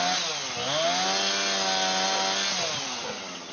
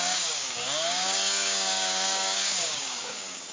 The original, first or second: first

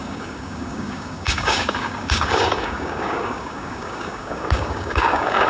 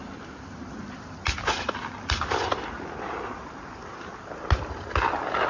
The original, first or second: second